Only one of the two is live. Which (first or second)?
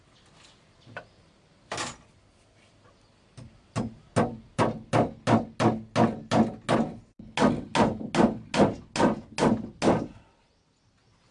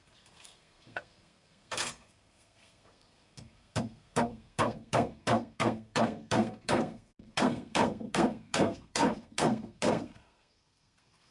first